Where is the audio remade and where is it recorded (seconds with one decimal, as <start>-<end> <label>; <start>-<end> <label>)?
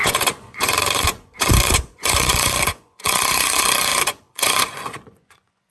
0.0-5.7 remade